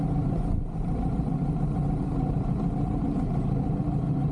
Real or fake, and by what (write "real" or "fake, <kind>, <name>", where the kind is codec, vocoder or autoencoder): real